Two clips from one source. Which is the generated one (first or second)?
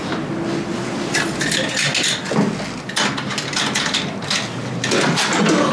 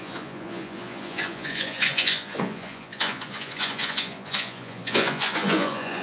second